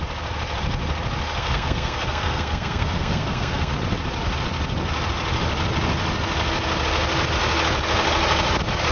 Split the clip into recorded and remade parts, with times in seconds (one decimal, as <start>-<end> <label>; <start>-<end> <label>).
0.0-1.4 recorded; 1.4-3.7 remade; 3.7-8.9 recorded